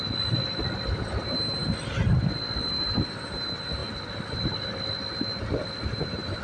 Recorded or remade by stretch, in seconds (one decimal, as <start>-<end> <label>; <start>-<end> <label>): 0.0-6.4 recorded

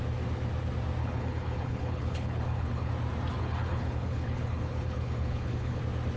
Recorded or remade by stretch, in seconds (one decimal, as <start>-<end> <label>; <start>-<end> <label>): 0.0-1.0 recorded; 1.0-2.9 remade; 2.9-3.4 recorded; 3.4-5.8 remade; 5.8-6.2 recorded